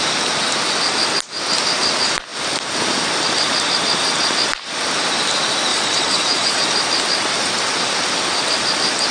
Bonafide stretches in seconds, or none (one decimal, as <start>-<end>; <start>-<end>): 0.0-5.7; 6.6-9.1